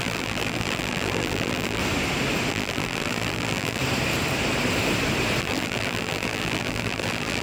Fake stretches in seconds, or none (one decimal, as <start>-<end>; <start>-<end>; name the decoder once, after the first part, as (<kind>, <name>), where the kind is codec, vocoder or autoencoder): 0.0-1.8 (vocoder, BigVGAN v2); 2.5-3.8; 5.4-7.4